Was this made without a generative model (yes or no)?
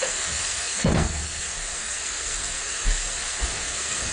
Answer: no